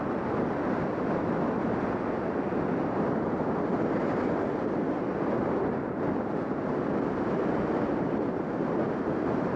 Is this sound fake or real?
real